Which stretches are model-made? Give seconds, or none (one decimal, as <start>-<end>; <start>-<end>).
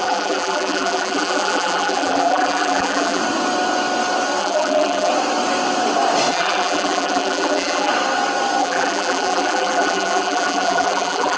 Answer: 0.0-3.2; 4.4-5.1; 6.3-7.9; 8.6-11.4